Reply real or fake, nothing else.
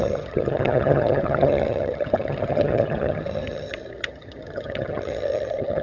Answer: fake